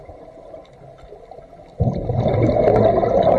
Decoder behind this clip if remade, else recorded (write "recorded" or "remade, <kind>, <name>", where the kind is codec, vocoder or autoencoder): recorded